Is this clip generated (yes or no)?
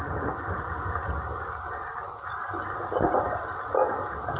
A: no